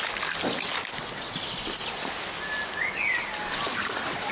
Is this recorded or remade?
recorded